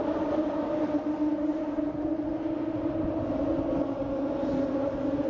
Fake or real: real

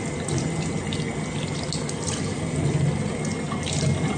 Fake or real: real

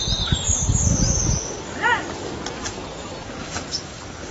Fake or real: real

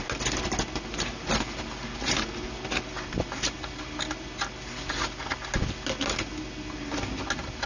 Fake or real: real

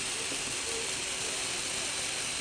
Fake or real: real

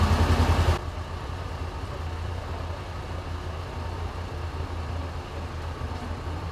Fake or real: real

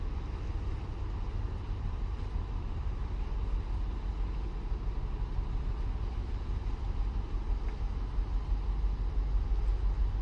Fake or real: real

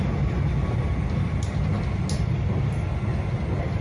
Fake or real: real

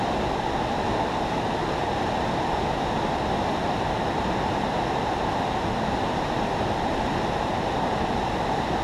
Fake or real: real